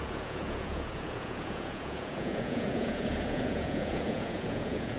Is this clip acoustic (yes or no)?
no